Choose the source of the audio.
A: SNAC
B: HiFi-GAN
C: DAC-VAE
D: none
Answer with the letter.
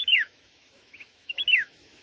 C